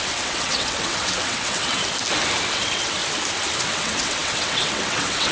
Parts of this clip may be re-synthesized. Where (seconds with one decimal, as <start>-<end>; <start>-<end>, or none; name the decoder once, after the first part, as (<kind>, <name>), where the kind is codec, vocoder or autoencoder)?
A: 0.0-1.8 (vocoder, WaveNeXt); 2.5-3.0; 3.6-5.3